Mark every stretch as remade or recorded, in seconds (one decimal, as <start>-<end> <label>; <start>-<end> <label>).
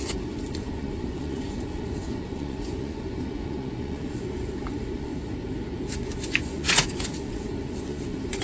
0.0-5.1 remade; 5.1-5.9 recorded; 5.9-8.4 remade